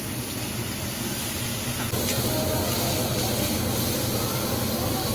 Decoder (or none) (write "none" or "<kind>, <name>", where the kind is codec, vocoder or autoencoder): none